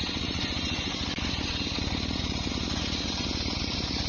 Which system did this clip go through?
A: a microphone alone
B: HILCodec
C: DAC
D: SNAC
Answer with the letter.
A